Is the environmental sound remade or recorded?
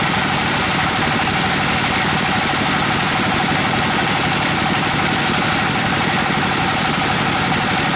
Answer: recorded